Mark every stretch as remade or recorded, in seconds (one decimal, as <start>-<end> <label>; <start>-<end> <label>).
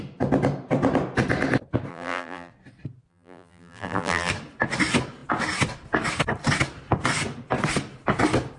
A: 0.0-1.9 recorded; 1.9-2.5 remade; 2.5-3.1 recorded; 3.1-4.3 remade; 4.3-8.6 recorded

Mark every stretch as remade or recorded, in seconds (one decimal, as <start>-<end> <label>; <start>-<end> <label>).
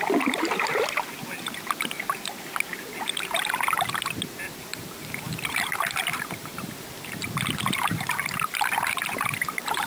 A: 0.0-4.7 recorded; 4.7-9.9 remade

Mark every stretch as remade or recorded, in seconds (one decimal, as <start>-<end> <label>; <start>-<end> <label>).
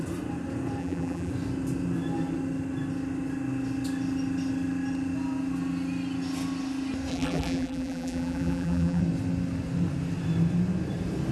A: 0.0-0.8 recorded; 0.8-1.3 remade; 1.3-7.1 recorded; 7.1-9.0 remade; 9.0-11.3 recorded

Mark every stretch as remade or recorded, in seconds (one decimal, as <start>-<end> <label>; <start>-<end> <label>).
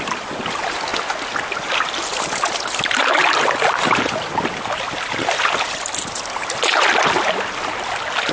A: 0.0-8.3 recorded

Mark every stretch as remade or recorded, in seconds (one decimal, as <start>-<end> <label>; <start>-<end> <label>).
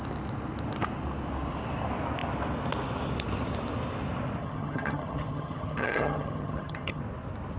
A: 0.0-4.4 recorded; 4.4-7.0 remade; 7.0-7.6 recorded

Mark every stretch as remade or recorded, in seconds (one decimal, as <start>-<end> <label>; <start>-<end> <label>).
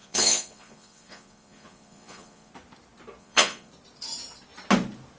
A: 0.0-2.5 remade; 2.5-3.2 recorded; 3.2-3.7 remade; 3.7-5.2 recorded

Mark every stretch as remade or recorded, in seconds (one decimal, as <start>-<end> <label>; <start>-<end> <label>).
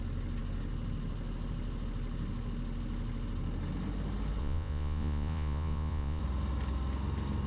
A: 0.0-4.4 recorded; 4.4-6.2 remade; 6.2-7.5 recorded